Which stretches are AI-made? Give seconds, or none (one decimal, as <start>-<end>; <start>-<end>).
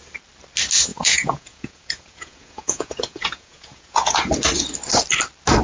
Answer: 0.9-4.3